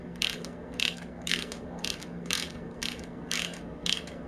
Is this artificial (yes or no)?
yes